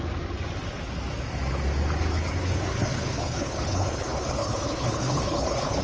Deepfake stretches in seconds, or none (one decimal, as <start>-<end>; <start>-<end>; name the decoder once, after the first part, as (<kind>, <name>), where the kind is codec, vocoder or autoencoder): 2.1-5.8 (codec, HILCodec)